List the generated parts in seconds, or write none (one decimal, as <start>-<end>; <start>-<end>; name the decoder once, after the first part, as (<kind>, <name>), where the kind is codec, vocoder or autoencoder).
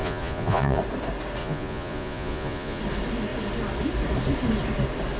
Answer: 0.0-0.8 (vocoder, Vocos); 1.4-2.8